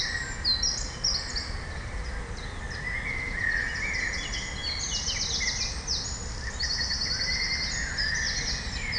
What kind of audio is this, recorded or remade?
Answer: recorded